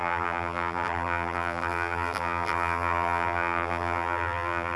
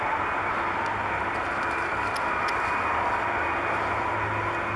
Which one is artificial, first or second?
first